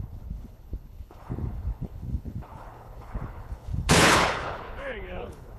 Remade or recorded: remade